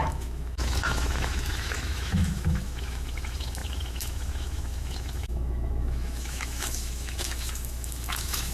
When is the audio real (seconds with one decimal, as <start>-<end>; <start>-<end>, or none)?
none